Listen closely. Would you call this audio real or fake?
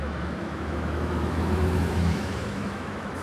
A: fake